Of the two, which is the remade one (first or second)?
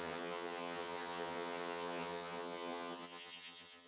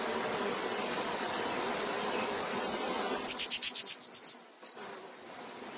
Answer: first